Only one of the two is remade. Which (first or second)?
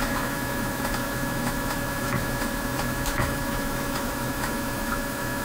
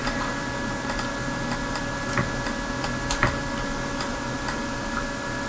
first